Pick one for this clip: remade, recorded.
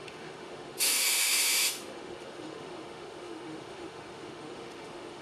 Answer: remade